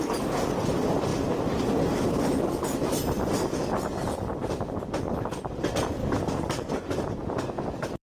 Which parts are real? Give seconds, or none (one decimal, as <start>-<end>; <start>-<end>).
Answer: 0.0-6.0; 6.7-7.2